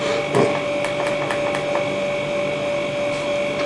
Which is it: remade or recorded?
recorded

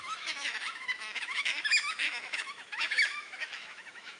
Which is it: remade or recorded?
remade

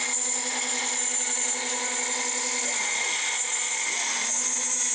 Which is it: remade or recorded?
recorded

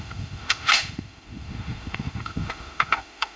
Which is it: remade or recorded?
remade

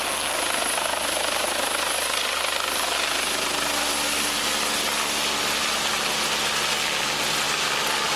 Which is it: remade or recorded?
recorded